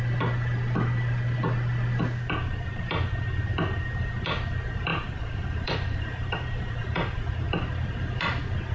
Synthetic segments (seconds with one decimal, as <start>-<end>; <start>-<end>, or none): 4.9-7.3